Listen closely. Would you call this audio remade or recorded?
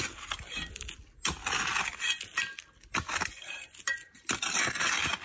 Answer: recorded